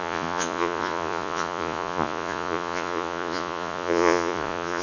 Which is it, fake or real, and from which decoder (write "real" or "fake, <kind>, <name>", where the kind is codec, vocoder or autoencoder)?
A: fake, vocoder, Vocos